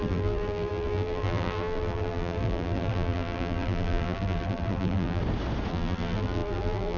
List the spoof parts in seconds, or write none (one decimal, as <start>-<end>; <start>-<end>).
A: 0.0-5.2; 5.7-7.0